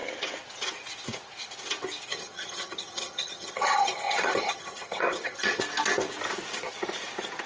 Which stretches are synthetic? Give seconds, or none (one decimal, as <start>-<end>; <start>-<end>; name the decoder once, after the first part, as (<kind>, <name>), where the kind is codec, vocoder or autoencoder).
2.1-5.6 (vocoder, HiFi-GAN)